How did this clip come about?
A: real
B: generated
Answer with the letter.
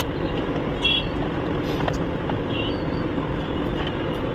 B